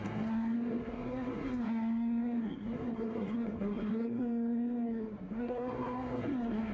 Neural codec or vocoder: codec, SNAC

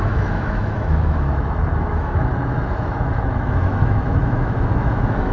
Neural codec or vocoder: autoencoder, DAC-VAE